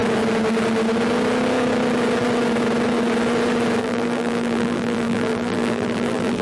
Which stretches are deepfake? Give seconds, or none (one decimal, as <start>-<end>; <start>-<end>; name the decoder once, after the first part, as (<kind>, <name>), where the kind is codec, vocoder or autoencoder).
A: 3.8-6.4 (vocoder, BigVGAN v2)